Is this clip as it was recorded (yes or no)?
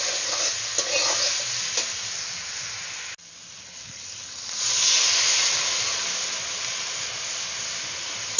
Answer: yes